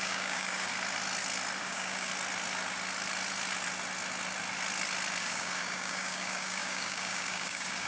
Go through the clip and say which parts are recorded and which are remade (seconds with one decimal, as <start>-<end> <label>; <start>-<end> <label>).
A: 0.0-0.7 remade; 0.7-1.6 recorded; 1.6-2.1 remade; 2.1-5.2 recorded; 5.2-7.9 remade